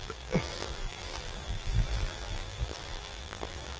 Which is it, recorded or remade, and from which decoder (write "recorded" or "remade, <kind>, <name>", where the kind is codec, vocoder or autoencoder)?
remade, vocoder, BigVGAN v2